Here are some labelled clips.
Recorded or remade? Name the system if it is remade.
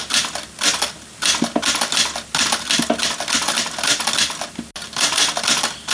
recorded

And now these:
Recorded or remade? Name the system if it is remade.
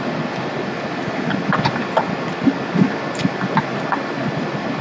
recorded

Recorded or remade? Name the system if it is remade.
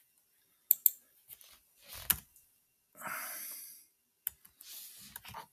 recorded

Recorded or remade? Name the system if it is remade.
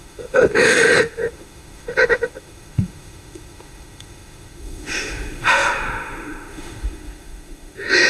remade, autoencoder, DAC-VAE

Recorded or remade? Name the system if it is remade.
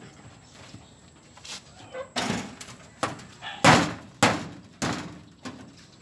recorded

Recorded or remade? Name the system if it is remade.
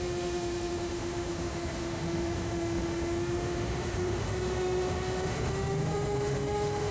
remade, autoencoder, DAC-VAE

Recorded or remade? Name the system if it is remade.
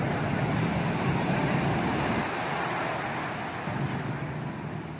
recorded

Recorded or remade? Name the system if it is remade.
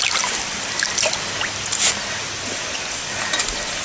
recorded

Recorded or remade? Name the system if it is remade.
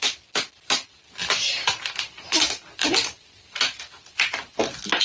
recorded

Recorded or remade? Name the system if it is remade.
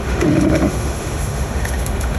remade, autoencoder, DAC-VAE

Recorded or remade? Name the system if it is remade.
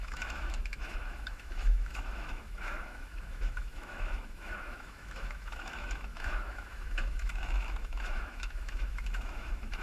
remade, autoencoder, DAC-VAE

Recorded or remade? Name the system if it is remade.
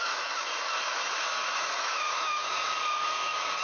remade, autoencoder, DAC-VAE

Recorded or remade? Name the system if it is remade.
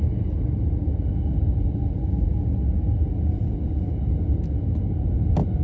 recorded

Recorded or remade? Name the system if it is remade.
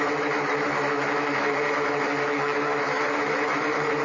remade, autoencoder, DAC-VAE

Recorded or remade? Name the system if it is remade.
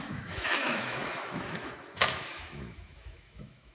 remade, autoencoder, DAC-VAE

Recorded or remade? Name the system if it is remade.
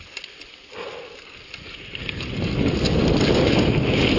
recorded